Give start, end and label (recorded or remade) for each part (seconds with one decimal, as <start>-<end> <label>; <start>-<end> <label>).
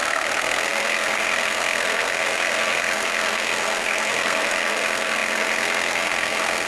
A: 0.0-6.7 remade